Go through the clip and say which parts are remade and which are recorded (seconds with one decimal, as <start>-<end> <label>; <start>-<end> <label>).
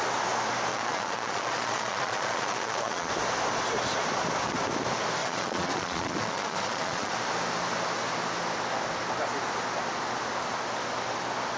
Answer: 0.0-0.7 recorded; 0.7-3.1 remade; 3.1-5.2 recorded; 5.2-7.1 remade; 7.1-11.6 recorded